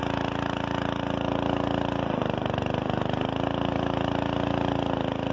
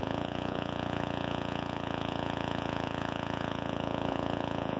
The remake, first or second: second